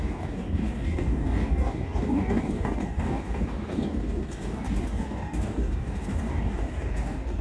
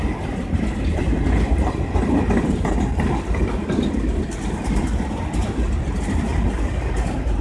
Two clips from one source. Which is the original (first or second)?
second